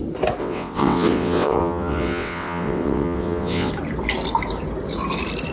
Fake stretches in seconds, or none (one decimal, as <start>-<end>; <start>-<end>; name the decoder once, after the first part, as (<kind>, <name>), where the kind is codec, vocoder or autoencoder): 0.4-3.7 (vocoder, WaveNeXt)